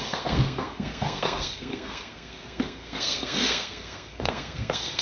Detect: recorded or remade remade